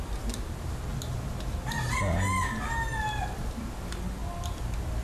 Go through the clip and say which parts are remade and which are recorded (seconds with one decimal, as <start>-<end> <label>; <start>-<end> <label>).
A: 0.0-0.9 recorded; 0.9-1.5 remade; 1.5-5.0 recorded